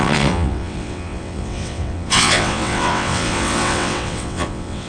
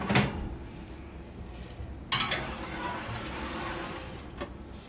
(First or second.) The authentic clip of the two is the second